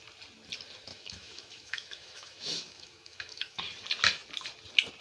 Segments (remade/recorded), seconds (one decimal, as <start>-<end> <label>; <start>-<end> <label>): 0.0-0.9 recorded; 0.9-3.6 remade; 3.6-5.0 recorded